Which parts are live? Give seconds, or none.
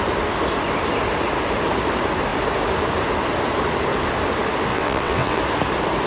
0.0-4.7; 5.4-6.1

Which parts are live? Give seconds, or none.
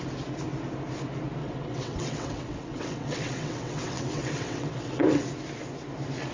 0.0-1.4; 5.2-6.3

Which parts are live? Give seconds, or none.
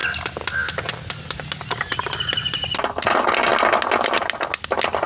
0.0-5.1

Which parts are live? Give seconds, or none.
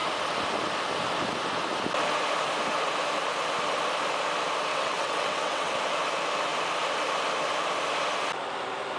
0.0-4.7; 5.7-9.0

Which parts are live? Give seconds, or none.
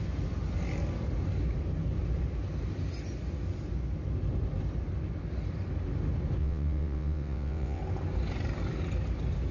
0.0-6.4; 7.8-9.5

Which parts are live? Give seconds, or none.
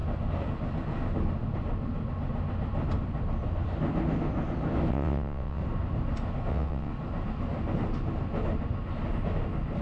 0.0-4.9; 5.6-6.5; 6.9-9.8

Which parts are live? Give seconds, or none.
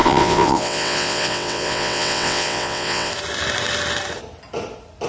3.1-5.1